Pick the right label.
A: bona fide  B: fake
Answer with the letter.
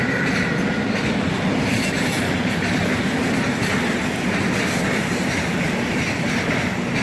A